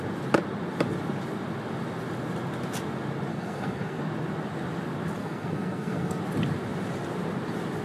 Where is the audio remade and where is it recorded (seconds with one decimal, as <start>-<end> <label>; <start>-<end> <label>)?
0.0-3.3 recorded; 3.3-4.0 remade; 4.0-5.2 recorded; 5.2-6.2 remade; 6.2-7.8 recorded